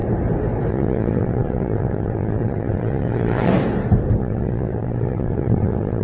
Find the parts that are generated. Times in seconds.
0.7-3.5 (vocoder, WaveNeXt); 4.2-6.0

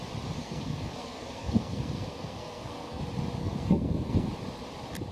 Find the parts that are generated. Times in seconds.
0.4-3.0 (codec, SNAC); 3.4-4.3

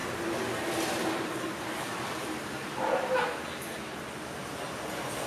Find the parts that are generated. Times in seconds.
none

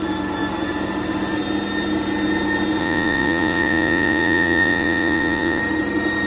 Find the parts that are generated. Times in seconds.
2.8-5.6 (vocoder, Vocos)

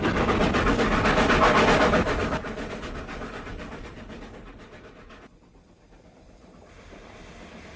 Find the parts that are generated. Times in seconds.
2.2-4.1 (vocoder, BigVGAN v2)

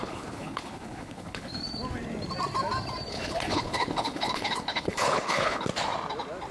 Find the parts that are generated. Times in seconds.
0.0-1.5 (codec, HILCodec); 3.1-5.7